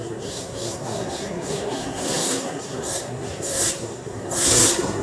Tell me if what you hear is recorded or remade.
remade